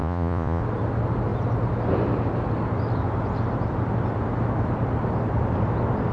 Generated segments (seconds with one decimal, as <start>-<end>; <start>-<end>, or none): 0.0-0.6